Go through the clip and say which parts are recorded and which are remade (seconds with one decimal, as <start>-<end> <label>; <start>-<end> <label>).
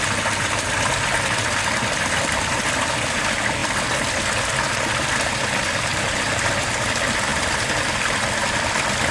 0.0-5.9 recorded; 5.9-6.8 remade; 6.8-9.1 recorded